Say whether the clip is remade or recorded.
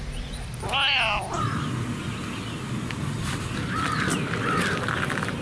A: recorded